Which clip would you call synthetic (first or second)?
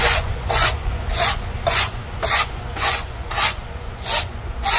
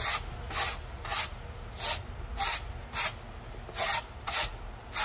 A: first